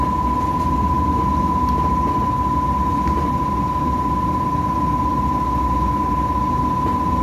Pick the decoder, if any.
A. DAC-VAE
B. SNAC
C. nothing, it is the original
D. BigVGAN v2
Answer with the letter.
C